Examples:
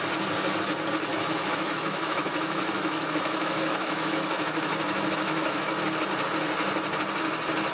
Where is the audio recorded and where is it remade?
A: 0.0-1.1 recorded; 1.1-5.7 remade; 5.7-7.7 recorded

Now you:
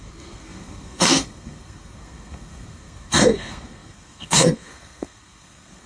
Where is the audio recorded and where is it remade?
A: 0.0-5.9 remade

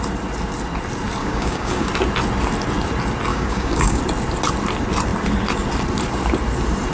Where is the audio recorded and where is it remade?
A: 0.0-1.2 recorded; 1.2-1.9 remade; 1.9-3.3 recorded; 3.3-4.0 remade; 4.0-6.9 recorded

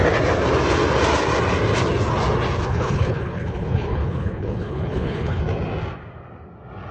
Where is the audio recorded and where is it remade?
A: 0.0-2.7 recorded; 2.7-5.4 remade; 5.4-6.9 recorded

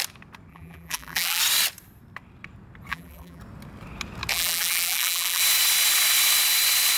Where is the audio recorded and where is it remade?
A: 0.0-0.5 recorded; 0.5-1.4 remade; 1.4-2.9 recorded; 2.9-3.4 remade; 3.4-4.3 recorded; 4.3-5.4 remade; 5.4-7.0 recorded

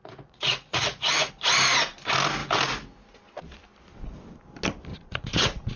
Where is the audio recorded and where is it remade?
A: 0.0-1.3 remade; 1.3-4.9 recorded; 4.9-5.8 remade